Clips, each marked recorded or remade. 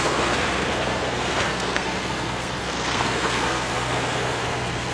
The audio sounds remade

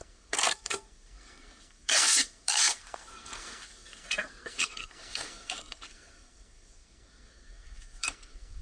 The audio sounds remade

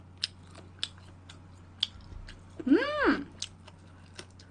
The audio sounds recorded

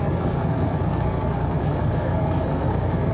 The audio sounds remade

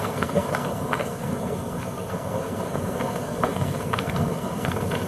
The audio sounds remade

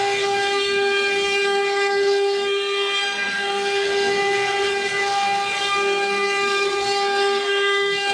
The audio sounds remade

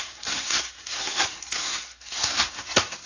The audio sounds remade